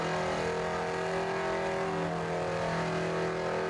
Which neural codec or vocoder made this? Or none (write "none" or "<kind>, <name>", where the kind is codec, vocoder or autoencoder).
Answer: none